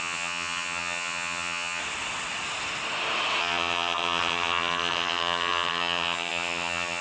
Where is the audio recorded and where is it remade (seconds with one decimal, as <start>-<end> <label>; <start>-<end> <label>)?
0.0-1.8 remade; 1.8-3.4 recorded; 3.4-7.0 remade